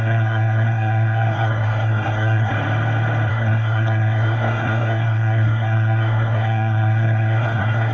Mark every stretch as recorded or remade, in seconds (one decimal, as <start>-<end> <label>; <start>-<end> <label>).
0.0-2.5 remade; 2.5-3.3 recorded; 3.3-7.9 remade